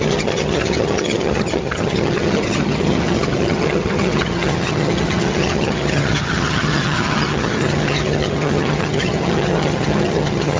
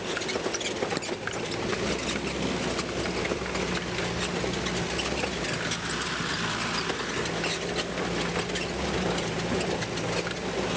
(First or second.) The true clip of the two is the second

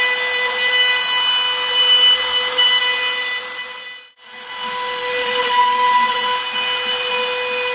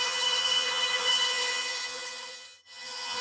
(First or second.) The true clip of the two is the first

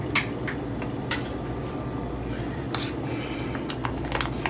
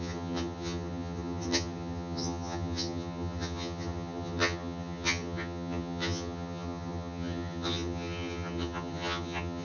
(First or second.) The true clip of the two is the first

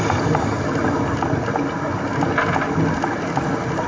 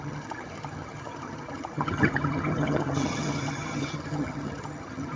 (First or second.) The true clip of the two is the first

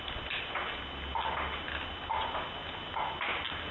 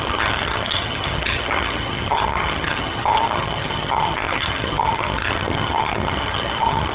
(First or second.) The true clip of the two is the first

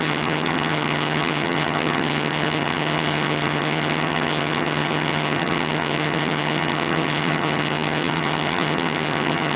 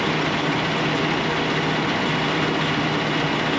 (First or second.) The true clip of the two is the second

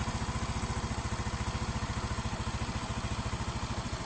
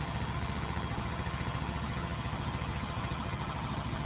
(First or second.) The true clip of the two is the first